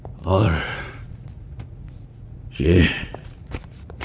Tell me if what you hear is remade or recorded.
remade